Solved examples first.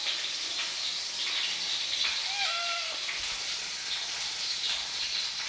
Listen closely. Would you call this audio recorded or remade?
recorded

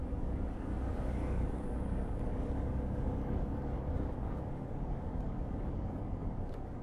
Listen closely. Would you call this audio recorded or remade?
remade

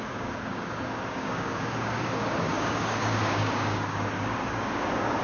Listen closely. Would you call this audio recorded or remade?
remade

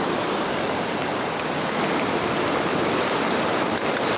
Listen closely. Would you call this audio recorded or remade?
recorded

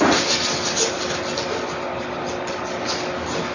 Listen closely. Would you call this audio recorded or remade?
recorded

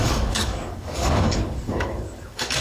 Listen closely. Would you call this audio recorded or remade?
remade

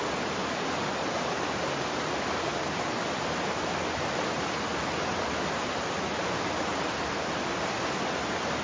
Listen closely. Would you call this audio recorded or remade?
recorded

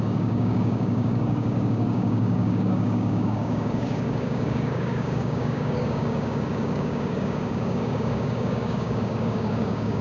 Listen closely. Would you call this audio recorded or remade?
remade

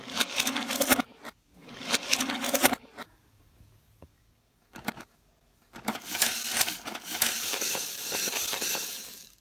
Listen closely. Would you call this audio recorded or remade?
remade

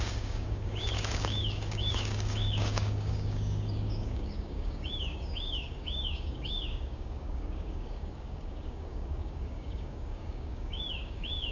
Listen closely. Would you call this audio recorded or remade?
remade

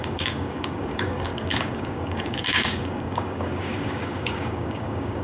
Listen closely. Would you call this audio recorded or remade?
remade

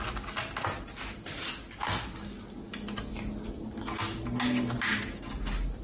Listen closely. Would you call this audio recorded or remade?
recorded